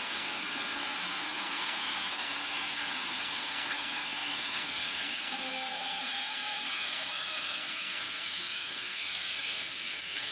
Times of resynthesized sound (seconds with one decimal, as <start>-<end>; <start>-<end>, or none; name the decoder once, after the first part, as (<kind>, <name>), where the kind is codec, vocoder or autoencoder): 0.0-10.3 (codec, SNAC)